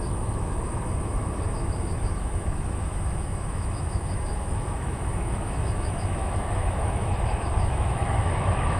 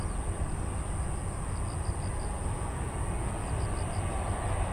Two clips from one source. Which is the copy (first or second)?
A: first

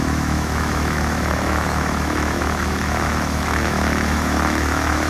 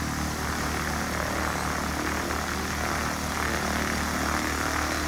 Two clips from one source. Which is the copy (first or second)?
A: first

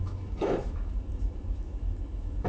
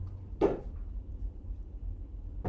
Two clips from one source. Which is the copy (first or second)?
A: first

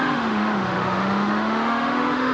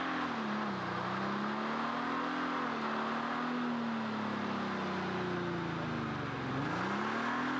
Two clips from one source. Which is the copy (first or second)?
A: first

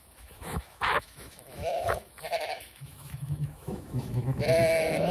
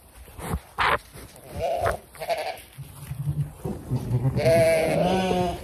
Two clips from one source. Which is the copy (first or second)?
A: first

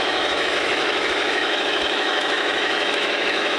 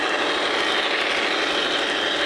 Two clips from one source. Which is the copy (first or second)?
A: first